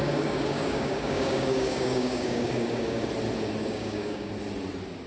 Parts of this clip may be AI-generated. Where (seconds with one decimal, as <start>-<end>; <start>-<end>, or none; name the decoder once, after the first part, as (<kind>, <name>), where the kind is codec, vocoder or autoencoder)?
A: 0.0-3.1 (codec, DAC); 3.6-4.3